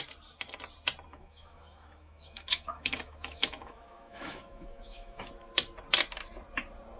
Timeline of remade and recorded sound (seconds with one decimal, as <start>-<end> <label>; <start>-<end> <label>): 0.0-1.1 recorded; 1.1-5.3 remade; 5.3-7.0 recorded